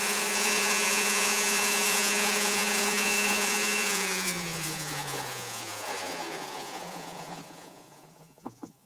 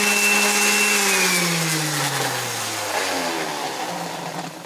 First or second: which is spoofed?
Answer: first